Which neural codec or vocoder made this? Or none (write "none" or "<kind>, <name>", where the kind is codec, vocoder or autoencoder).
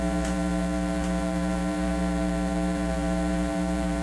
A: vocoder, BigVGAN v2